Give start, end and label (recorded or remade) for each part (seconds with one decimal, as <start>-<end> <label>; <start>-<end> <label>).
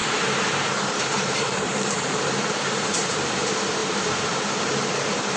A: 0.0-5.4 remade